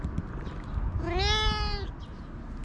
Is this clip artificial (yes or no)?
no